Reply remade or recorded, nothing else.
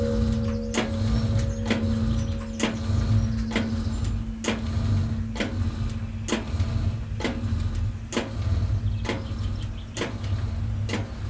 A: recorded